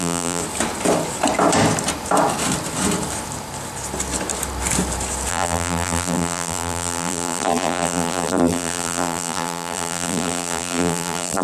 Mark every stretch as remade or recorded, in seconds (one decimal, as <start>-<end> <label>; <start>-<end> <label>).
0.0-0.4 remade; 0.4-5.3 recorded; 5.3-11.4 remade